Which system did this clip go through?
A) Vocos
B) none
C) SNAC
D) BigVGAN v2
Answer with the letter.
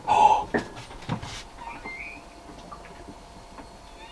B